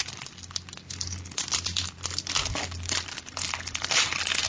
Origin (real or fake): fake